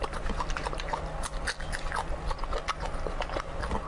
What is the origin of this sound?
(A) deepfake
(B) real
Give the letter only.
B